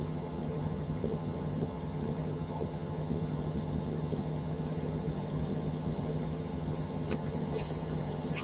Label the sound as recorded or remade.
remade